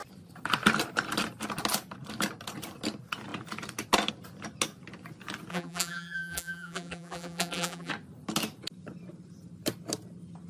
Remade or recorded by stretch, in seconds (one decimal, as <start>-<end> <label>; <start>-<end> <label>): 0.0-5.5 recorded; 5.5-7.9 remade; 7.9-10.5 recorded